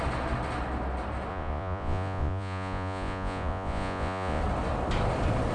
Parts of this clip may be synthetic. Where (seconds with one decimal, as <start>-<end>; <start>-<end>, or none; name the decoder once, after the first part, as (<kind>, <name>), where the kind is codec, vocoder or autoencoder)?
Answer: 1.3-4.4 (vocoder, Vocos)